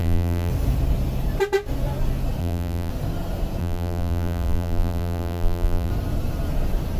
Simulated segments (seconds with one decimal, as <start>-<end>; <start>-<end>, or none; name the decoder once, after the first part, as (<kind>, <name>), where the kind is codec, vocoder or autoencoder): 0.0-0.5 (vocoder, BigVGAN v2); 2.4-2.9; 3.6-5.9